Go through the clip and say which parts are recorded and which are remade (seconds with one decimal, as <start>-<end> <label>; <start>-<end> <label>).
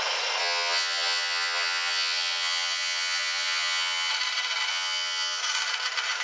0.0-0.4 recorded; 0.4-4.1 remade; 4.1-4.7 recorded; 4.7-5.4 remade; 5.4-6.2 recorded